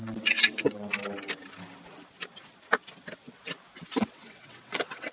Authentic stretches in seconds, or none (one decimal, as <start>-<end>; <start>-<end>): 0.9-4.0